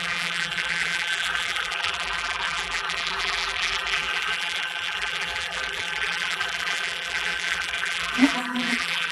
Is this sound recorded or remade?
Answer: remade